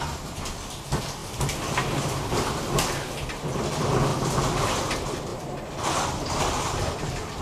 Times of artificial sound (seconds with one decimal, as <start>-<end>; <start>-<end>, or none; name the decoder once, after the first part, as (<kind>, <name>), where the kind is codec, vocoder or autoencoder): 1.2-2.8 (vocoder, BigVGAN v2); 4.1-4.7; 5.3-7.4